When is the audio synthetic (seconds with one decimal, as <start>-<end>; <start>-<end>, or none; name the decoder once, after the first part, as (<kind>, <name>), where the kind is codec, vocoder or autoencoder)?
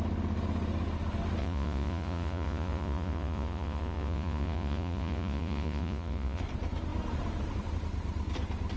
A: 1.4-6.4 (vocoder, Vocos)